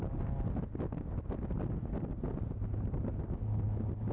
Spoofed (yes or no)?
no